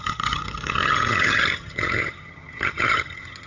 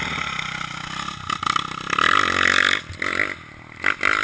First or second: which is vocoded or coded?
first